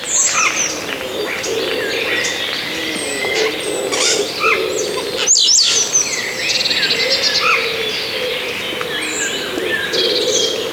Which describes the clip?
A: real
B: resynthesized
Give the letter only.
A